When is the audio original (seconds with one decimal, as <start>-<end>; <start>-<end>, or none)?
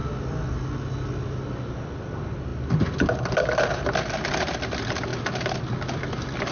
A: 0.0-2.5; 4.5-6.5